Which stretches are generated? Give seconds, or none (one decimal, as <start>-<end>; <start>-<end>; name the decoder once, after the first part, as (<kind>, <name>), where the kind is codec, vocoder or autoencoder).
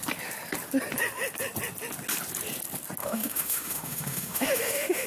3.0-5.1 (autoencoder, DAC-VAE)